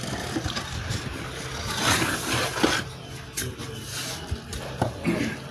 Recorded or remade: recorded